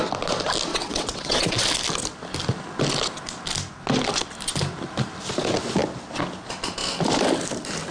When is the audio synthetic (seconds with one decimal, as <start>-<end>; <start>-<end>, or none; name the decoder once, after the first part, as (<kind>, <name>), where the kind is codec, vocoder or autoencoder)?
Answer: 0.7-1.5 (vocoder, WaveNeXt)